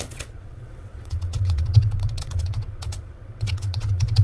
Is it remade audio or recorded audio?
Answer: remade